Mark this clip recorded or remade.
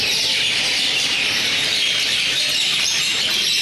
remade